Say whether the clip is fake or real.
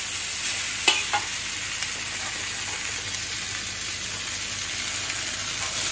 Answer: real